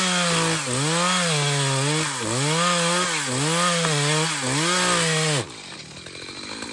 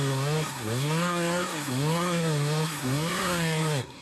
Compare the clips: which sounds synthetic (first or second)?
second